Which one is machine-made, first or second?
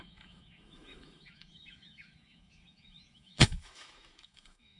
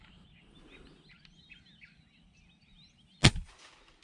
first